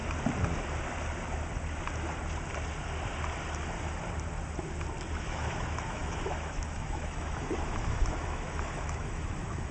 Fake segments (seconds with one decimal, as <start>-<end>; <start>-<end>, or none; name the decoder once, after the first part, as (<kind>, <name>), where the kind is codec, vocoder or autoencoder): 5.2-9.7 (autoencoder, DAC-VAE)